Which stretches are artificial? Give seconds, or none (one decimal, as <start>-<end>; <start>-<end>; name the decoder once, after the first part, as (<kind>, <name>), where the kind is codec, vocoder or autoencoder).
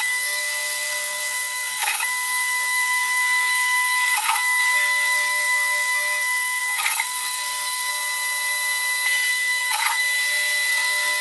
0.0-7.9 (codec, SNAC); 9.3-10.0; 10.7-11.2